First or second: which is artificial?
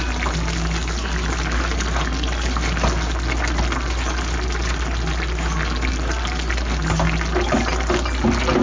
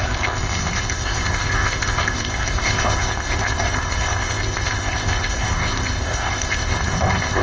second